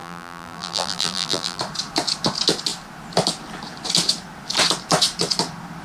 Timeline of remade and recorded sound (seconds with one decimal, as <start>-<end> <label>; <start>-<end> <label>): 0.0-1.6 remade; 1.6-5.8 recorded